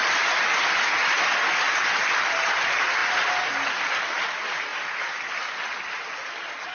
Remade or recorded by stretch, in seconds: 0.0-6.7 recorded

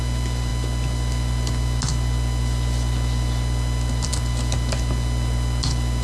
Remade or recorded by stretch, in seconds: 0.0-6.0 recorded